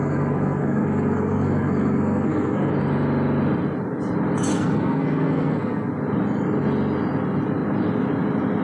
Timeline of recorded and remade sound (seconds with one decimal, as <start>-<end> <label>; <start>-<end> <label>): 0.0-2.7 remade; 2.7-4.5 recorded; 4.5-5.9 remade; 5.9-8.6 recorded